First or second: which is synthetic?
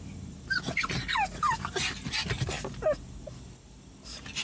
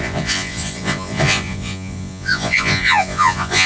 second